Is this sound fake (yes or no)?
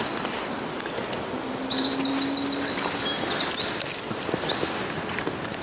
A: no